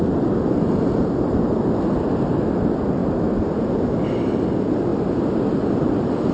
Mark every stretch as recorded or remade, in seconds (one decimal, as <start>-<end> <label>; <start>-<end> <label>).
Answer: 0.0-3.0 remade; 3.0-4.5 recorded; 4.5-6.3 remade